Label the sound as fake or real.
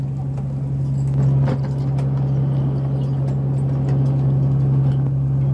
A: real